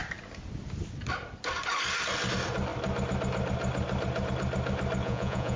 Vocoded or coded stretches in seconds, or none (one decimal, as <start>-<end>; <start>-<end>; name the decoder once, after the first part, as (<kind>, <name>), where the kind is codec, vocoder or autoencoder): 5.0-5.6 (vocoder, Vocos)